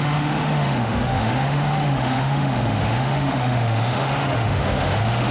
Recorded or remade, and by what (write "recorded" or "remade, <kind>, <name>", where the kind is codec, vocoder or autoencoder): remade, autoencoder, DAC-VAE